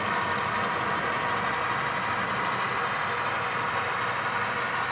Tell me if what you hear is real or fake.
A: real